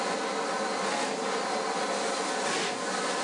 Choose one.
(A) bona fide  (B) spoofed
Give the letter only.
A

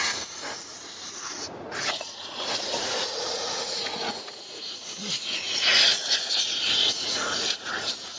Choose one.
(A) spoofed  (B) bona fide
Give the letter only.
A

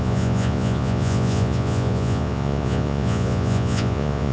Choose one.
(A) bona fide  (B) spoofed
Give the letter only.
B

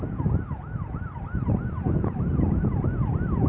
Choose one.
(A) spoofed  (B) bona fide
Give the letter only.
B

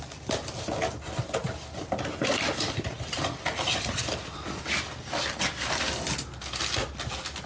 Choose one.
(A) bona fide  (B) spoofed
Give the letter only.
A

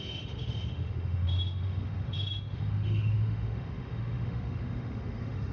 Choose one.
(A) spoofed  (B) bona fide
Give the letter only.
A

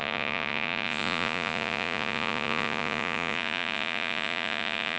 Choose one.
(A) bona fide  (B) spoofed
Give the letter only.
B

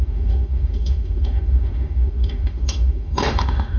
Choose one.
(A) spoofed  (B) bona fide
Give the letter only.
A